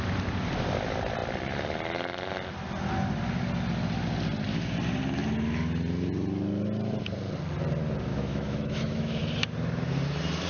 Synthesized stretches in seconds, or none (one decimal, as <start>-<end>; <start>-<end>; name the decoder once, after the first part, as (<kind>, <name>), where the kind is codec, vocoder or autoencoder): 8.1-9.2 (autoencoder, DAC-VAE)